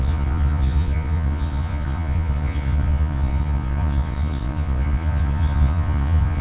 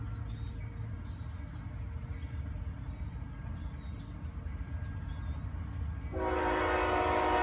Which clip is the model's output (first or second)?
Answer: first